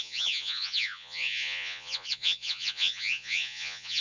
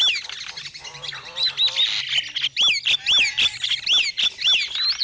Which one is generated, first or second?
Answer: first